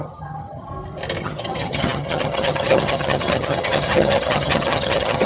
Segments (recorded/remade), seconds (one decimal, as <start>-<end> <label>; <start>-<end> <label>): 0.0-0.7 remade; 0.7-1.2 recorded; 1.2-5.3 remade